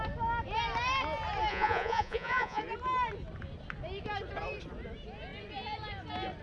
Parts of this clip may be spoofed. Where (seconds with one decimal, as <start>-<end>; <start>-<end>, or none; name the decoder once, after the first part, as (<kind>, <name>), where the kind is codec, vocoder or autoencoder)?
1.5-2.6 (vocoder, Vocos)